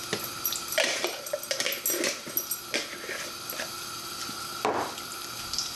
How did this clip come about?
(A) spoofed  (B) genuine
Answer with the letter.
B